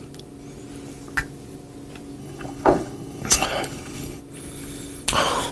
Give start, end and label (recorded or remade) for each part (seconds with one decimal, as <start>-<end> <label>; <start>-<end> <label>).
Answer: 0.0-2.2 recorded; 2.2-4.2 remade; 4.2-5.5 recorded